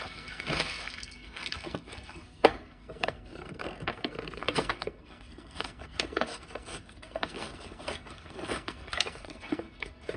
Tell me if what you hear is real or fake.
fake